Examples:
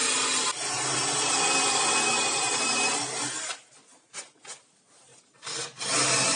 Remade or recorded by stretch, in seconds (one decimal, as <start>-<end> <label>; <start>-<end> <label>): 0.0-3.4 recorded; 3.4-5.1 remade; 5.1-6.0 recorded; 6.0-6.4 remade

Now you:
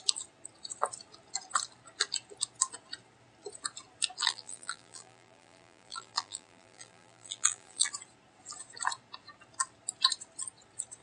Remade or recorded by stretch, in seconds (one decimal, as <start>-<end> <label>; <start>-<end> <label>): 0.0-4.2 recorded; 4.2-7.9 remade; 7.9-11.0 recorded

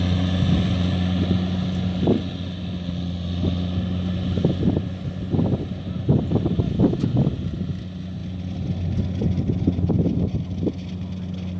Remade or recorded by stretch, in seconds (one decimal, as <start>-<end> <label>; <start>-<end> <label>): 0.0-11.6 recorded

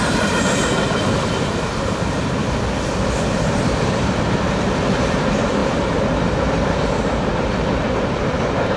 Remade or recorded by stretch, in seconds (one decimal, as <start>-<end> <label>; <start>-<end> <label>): 0.0-2.4 remade; 2.4-3.4 recorded; 3.4-8.8 remade